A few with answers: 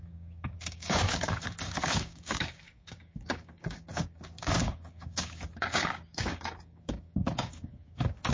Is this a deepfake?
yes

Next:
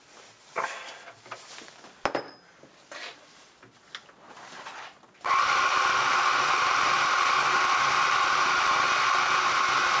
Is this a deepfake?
no